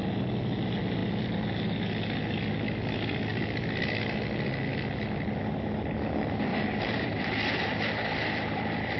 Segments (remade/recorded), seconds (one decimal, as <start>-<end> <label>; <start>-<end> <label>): 0.0-6.5 recorded; 6.5-9.0 remade